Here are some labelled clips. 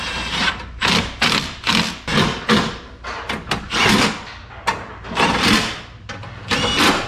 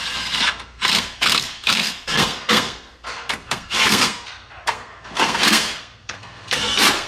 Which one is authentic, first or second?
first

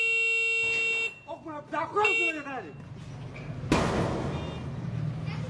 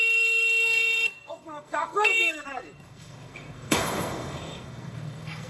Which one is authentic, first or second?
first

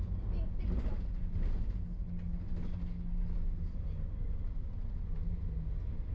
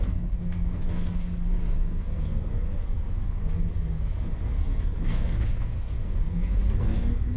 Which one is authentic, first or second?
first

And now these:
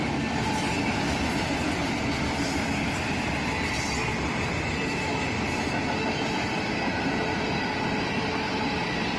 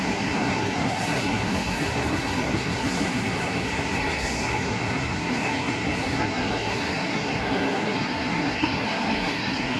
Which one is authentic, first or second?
first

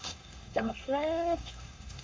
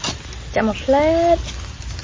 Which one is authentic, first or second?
second